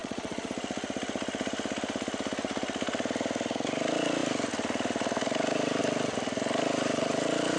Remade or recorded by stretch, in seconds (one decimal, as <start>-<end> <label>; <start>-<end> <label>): 0.0-0.5 remade; 0.5-7.6 recorded